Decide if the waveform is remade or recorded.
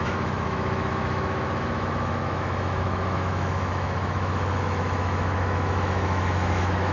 remade